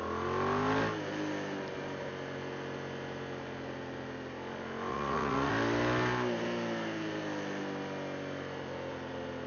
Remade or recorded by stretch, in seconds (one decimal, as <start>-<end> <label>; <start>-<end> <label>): 0.0-4.9 recorded; 4.9-5.5 remade; 5.5-9.5 recorded